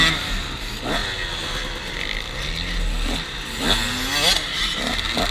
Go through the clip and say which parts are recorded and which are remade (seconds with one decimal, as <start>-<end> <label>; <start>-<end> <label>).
0.0-5.3 recorded